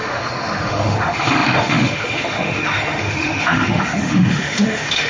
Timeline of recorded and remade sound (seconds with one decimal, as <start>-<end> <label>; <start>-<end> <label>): 0.0-5.1 remade